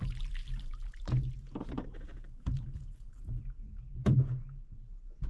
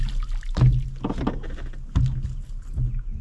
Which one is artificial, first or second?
first